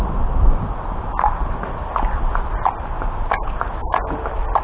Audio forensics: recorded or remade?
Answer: recorded